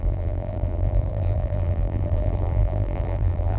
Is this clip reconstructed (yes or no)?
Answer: yes